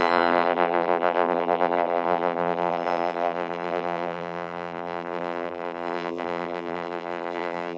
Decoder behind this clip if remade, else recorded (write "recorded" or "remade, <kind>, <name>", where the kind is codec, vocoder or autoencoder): remade, vocoder, BigVGAN v2